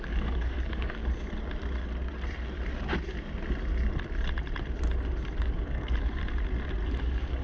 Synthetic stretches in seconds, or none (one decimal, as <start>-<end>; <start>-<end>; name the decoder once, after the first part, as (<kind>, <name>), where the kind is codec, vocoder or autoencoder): 0.0-1.0 (codec, DAC); 5.4-6.2; 7.0-7.4